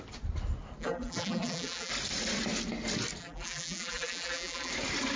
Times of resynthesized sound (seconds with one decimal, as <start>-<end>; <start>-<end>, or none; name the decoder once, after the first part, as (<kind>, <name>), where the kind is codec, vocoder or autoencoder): 0.8-1.9 (vocoder, BigVGAN v2); 3.2-4.7

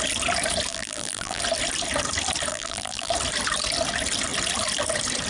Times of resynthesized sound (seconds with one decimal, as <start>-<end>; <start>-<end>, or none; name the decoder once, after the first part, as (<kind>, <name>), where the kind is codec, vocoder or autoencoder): 0.7-1.4 (vocoder, BigVGAN v2); 2.5-3.1

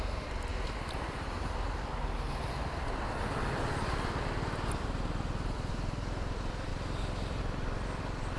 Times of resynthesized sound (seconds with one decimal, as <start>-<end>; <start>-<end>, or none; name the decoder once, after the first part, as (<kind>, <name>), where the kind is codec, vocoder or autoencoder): 0.0-8.4 (vocoder, BigVGAN v2)

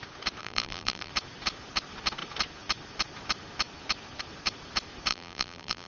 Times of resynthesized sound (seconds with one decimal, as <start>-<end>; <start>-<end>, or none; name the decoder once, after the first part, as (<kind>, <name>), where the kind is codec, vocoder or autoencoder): 0.4-1.1 (vocoder, BigVGAN v2); 5.1-5.9

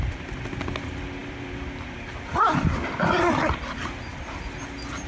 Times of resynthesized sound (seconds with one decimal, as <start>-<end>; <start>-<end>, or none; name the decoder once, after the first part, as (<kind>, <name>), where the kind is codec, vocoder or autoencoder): 0.0-4.1 (vocoder, BigVGAN v2); 4.6-5.1